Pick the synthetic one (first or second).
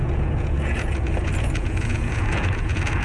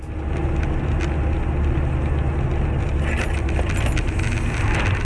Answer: first